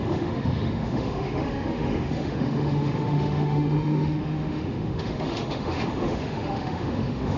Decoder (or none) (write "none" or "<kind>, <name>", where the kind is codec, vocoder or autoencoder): autoencoder, DAC-VAE